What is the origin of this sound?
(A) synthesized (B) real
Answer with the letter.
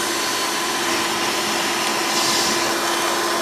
B